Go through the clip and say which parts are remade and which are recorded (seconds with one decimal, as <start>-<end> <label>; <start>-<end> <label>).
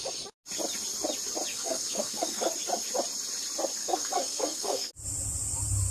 0.0-1.5 recorded; 1.5-2.4 remade; 2.4-3.8 recorded; 3.8-4.9 remade; 4.9-5.9 recorded